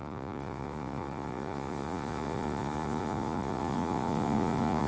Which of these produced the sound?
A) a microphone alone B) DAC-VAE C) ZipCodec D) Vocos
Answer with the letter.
D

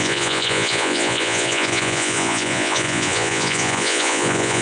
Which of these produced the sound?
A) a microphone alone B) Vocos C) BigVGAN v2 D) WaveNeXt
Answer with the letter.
B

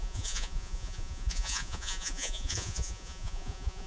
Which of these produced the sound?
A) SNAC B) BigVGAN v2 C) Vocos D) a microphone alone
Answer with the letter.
C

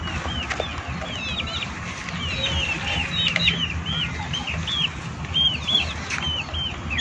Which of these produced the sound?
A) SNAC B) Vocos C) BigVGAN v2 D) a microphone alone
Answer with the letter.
D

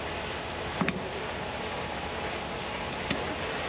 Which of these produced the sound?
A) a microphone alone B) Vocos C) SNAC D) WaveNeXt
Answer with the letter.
A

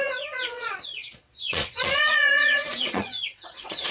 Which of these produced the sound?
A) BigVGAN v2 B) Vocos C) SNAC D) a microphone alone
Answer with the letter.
B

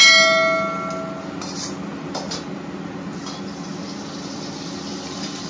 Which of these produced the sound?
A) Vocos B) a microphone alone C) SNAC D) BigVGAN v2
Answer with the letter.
B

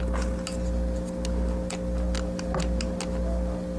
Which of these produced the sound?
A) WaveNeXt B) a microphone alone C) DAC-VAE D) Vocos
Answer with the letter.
B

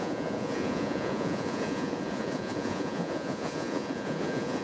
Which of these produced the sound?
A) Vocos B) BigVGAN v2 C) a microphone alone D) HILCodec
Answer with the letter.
A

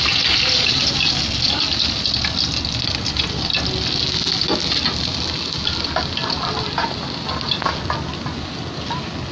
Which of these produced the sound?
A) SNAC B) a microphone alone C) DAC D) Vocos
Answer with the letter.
B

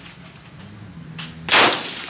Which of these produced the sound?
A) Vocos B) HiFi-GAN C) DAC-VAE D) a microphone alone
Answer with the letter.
D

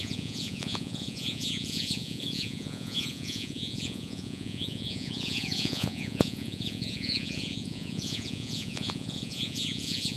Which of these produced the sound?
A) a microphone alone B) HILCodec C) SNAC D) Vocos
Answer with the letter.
D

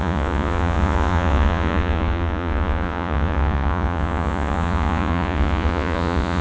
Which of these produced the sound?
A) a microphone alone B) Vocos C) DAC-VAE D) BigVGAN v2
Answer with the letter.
B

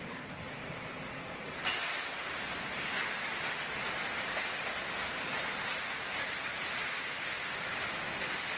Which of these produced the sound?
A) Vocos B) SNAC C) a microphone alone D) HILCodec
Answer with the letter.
C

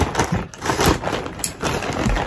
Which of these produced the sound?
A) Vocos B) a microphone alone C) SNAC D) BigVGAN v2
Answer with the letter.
B